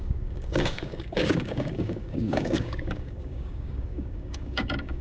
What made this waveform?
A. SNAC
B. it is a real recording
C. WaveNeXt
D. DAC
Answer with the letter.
D